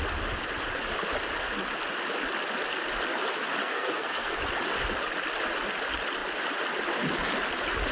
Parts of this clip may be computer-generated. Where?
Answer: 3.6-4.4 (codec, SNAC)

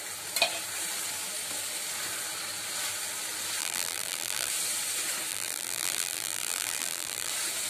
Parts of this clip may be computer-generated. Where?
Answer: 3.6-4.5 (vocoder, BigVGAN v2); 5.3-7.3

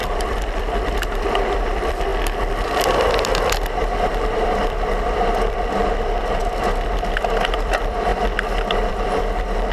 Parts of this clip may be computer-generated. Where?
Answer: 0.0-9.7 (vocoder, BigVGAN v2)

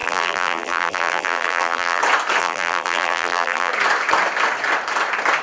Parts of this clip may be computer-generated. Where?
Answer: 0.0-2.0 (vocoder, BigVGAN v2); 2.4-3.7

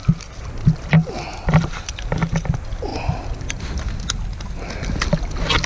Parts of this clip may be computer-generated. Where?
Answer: none